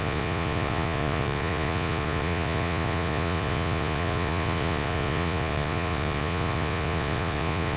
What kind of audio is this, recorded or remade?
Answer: remade